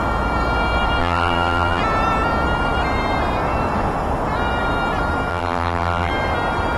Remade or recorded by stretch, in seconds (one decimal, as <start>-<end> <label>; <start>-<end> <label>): 0.0-1.0 recorded; 1.0-1.8 remade; 1.8-5.3 recorded; 5.3-6.1 remade; 6.1-6.8 recorded